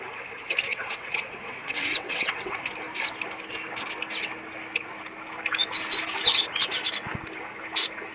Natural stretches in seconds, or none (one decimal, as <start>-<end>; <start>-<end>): 0.0-0.7; 2.6-8.1